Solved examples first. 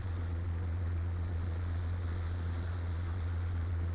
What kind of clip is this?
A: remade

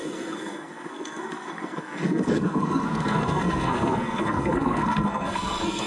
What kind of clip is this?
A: remade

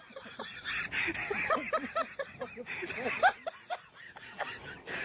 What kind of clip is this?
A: recorded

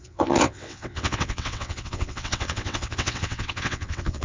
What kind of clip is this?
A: remade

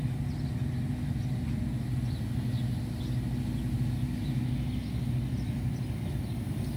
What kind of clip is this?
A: recorded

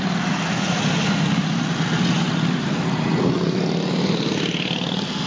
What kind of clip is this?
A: recorded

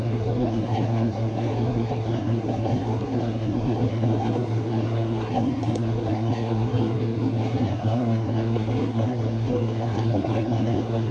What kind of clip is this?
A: remade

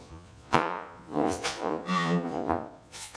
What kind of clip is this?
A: remade